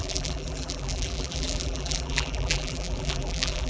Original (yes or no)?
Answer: no